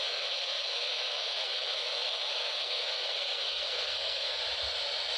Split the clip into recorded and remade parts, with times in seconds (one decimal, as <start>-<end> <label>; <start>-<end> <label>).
0.0-4.4 remade; 4.4-5.2 recorded